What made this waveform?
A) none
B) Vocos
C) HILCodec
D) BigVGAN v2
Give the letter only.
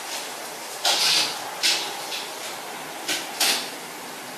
D